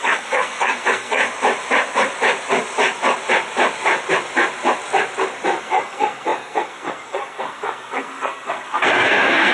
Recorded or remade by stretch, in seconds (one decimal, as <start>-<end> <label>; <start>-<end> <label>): 0.0-1.2 remade; 1.2-5.6 recorded; 5.6-9.5 remade